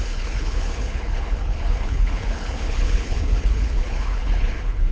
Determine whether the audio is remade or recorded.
remade